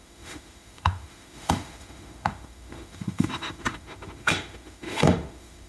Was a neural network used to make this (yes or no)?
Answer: yes